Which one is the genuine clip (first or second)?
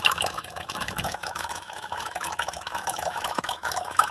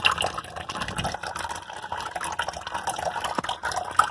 second